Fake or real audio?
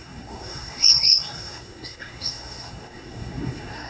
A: fake